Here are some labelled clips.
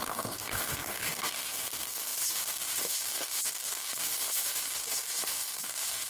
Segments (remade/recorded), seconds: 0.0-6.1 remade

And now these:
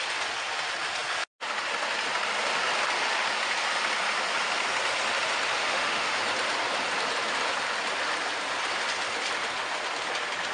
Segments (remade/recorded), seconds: 0.0-5.6 recorded; 5.6-6.2 remade; 6.2-10.5 recorded

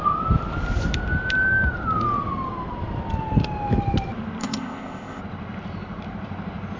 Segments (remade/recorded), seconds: 0.0-4.4 recorded; 4.4-5.2 remade; 5.2-6.8 recorded

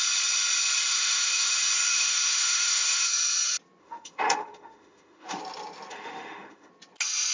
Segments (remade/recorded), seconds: 0.0-0.9 recorded; 0.9-1.5 remade; 1.5-1.9 recorded; 1.9-3.1 remade; 3.1-3.8 recorded; 3.8-5.4 remade; 5.4-5.9 recorded; 5.9-6.7 remade; 6.7-7.3 recorded